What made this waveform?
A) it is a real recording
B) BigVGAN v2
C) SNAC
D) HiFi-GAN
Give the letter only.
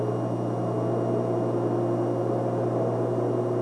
A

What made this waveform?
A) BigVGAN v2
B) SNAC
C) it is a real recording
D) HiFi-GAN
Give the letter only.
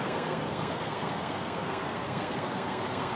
B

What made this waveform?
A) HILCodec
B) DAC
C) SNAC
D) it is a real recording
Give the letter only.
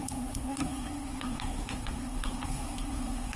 C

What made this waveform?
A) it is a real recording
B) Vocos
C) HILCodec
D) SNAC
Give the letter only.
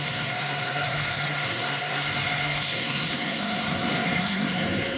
D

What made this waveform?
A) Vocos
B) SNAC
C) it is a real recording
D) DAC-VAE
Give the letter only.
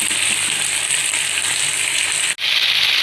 C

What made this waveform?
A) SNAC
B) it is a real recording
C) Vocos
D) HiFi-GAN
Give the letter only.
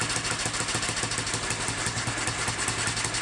B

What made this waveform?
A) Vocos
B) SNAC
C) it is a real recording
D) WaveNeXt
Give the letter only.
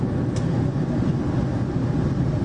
C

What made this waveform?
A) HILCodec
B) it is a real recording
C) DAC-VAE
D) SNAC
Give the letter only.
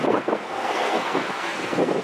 D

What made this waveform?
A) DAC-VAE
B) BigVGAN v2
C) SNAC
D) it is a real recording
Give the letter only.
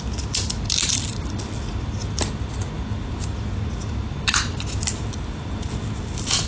D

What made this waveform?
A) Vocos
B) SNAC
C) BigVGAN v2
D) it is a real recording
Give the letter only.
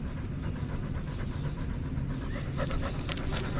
D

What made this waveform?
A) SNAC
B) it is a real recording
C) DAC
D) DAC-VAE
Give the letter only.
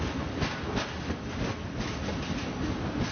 B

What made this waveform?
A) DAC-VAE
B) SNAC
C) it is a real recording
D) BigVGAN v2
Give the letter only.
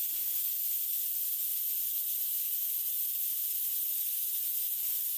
C